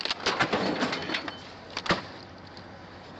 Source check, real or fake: real